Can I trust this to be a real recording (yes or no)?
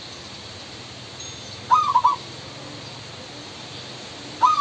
yes